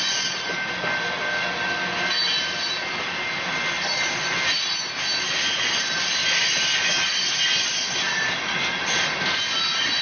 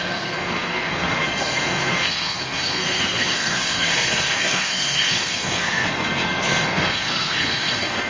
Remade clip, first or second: second